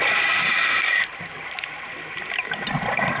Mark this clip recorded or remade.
remade